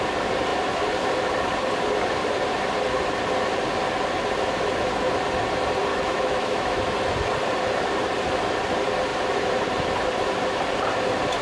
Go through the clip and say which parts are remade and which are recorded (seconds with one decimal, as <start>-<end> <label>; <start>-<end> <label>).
0.0-5.9 recorded; 5.9-6.8 remade; 6.8-11.4 recorded